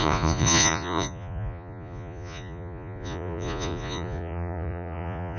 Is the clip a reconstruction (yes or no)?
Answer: yes